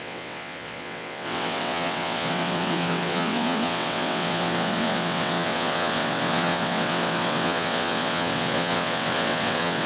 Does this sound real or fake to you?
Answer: fake